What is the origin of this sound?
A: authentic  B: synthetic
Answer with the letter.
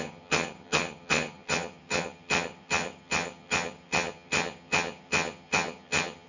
B